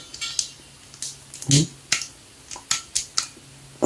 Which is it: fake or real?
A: real